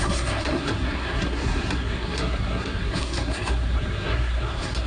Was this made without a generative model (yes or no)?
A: no